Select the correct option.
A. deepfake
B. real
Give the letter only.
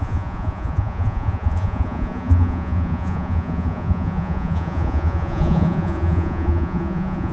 A